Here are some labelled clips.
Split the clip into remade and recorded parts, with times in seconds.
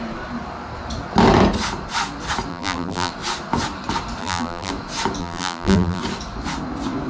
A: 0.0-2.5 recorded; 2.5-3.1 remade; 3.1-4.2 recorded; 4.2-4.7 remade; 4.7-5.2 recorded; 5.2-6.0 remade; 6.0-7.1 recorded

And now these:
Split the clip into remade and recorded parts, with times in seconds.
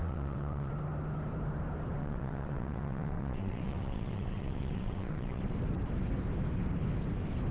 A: 0.0-0.7 remade; 0.7-2.0 recorded; 2.0-5.4 remade; 5.4-7.5 recorded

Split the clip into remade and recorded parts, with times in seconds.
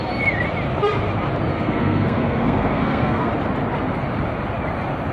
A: 0.0-1.5 recorded; 1.5-3.3 remade; 3.3-5.1 recorded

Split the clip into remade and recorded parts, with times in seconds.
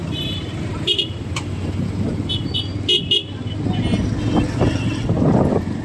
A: 0.0-2.5 remade; 2.5-5.8 recorded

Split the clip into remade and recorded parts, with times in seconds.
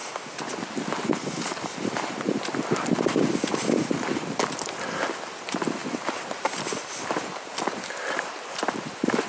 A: 0.0-9.3 recorded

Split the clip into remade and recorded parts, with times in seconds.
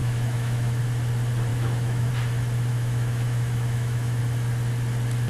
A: 0.0-0.8 remade; 0.8-1.5 recorded; 1.5-2.1 remade; 2.1-2.7 recorded; 2.7-4.2 remade; 4.2-5.3 recorded